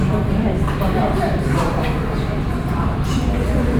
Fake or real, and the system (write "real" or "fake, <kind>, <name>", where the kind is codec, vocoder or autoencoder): fake, vocoder, BigVGAN v2